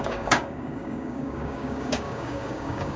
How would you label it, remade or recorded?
remade